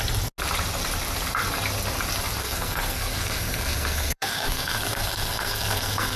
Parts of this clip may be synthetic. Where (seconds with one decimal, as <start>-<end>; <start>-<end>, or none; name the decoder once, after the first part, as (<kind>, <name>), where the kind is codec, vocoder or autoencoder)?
2.4-6.2 (codec, SNAC)